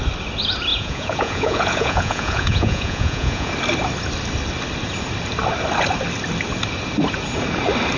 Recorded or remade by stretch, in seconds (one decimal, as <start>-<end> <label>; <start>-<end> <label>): 0.0-0.7 recorded; 0.7-3.5 remade; 3.5-8.0 recorded